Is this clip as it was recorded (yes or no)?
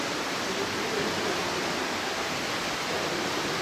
yes